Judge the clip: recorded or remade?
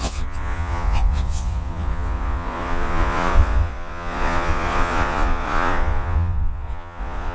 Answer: remade